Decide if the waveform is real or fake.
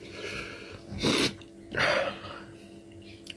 real